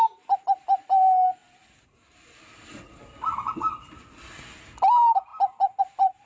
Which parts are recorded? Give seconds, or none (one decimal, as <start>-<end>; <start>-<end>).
0.0-6.3